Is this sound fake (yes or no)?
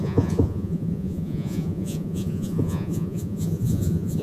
yes